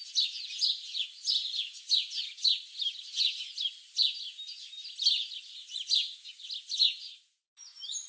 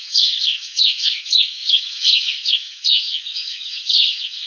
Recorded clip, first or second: first